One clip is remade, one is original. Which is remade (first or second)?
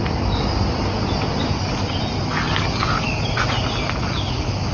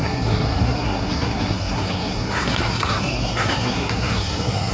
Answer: second